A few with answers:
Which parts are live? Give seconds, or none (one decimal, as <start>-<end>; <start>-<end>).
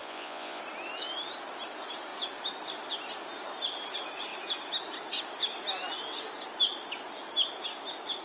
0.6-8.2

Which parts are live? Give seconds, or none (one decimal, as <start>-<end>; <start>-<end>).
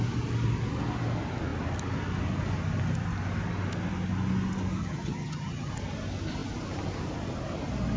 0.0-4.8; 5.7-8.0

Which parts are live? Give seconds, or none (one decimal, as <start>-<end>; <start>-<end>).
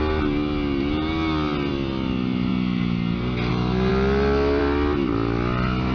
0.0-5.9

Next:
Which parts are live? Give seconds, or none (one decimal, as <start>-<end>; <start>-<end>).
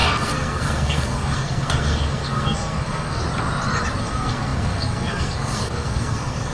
3.2-4.0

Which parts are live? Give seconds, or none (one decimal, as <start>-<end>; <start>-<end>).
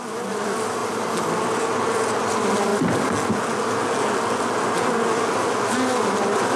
0.0-6.6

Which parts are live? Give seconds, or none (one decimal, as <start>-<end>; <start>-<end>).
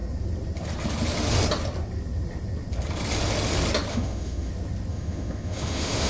0.0-3.9; 4.5-4.9